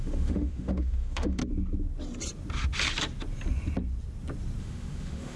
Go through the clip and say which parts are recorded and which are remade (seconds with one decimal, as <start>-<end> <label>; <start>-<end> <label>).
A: 0.0-1.4 remade; 1.4-4.6 recorded; 4.6-5.4 remade